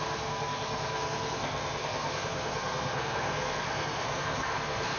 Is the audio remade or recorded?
remade